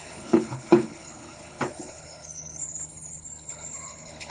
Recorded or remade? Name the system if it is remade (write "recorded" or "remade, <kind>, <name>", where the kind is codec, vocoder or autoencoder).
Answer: remade, codec, HILCodec